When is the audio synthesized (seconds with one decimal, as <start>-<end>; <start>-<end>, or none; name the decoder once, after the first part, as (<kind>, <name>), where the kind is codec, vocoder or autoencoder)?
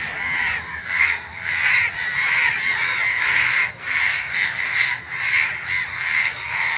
0.8-1.5 (codec, SNAC); 3.1-5.0; 5.9-6.8